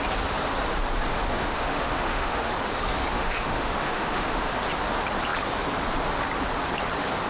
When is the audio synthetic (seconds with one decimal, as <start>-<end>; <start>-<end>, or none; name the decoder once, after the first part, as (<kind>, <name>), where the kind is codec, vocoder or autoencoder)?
1.1-2.5 (autoencoder, DAC-VAE); 3.1-4.5